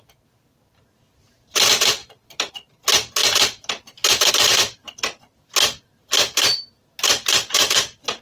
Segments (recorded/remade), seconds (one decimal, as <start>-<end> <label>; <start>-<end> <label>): 0.0-2.0 remade; 2.0-2.5 recorded; 2.5-6.5 remade; 6.5-7.1 recorded; 7.1-8.2 remade